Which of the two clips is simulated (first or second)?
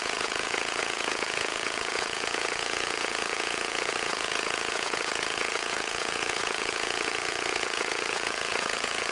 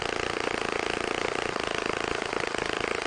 first